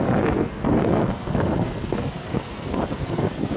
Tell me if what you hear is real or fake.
fake